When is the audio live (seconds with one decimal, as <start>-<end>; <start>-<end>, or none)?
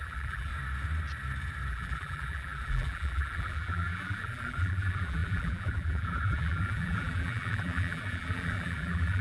0.5-1.7